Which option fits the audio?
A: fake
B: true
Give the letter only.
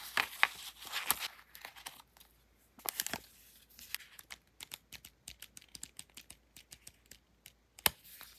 B